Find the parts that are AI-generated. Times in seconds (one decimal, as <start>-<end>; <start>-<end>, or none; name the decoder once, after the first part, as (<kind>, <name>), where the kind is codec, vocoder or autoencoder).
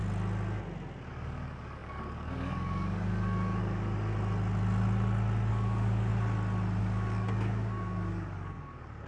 1.1-4.1 (codec, DAC); 5.5-6.1; 6.8-9.1